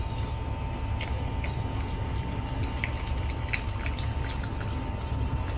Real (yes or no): yes